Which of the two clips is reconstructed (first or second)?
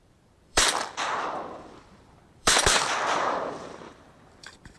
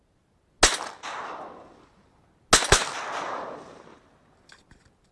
first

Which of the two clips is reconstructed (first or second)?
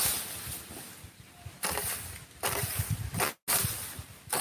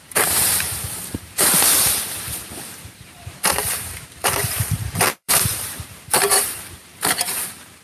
second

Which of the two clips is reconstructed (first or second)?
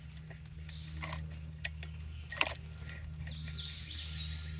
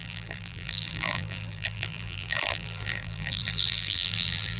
second